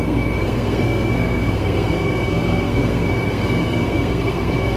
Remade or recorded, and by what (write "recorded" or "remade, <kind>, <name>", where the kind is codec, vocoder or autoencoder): remade, codec, SNAC